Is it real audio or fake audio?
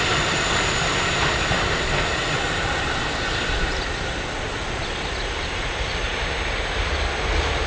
real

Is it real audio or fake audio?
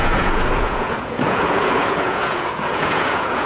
fake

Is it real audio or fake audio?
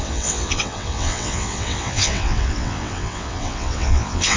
fake